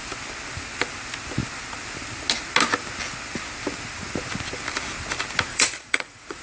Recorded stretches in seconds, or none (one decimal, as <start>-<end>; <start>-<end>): 0.0-5.5